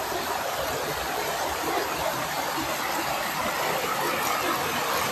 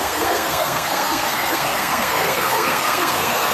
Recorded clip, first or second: first